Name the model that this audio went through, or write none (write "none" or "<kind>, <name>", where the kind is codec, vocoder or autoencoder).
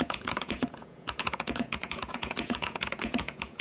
vocoder, Vocos